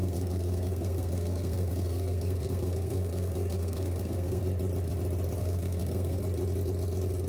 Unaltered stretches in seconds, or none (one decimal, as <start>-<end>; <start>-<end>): 4.4-5.4; 6.2-7.3